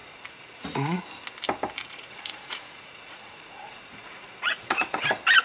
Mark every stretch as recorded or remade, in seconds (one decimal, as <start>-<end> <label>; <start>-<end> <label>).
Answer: 0.0-1.0 remade; 1.0-1.8 recorded; 1.8-5.0 remade; 5.0-5.4 recorded